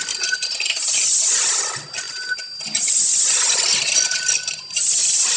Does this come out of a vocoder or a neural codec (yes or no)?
no